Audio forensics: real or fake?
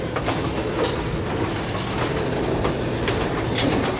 real